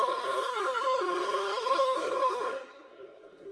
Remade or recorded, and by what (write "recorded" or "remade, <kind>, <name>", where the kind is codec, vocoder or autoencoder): remade, codec, SNAC